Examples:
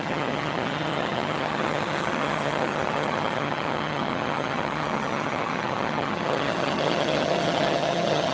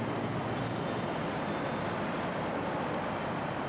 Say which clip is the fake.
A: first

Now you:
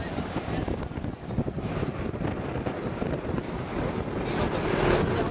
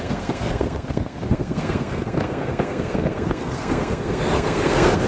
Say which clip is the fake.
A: second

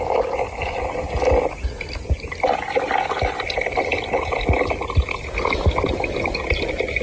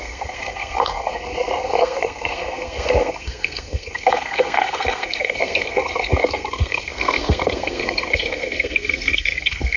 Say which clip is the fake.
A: second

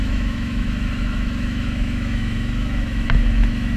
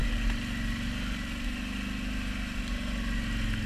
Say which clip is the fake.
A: first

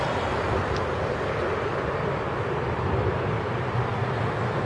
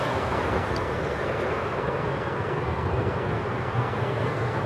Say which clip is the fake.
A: second